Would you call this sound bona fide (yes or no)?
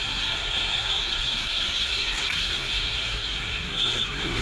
no